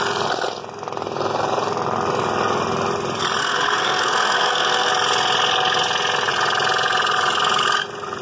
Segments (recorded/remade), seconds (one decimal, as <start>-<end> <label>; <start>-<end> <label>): 0.0-3.4 recorded; 3.4-4.9 remade; 4.9-8.2 recorded